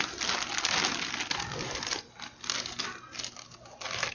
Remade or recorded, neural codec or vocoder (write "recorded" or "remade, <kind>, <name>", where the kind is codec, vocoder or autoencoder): recorded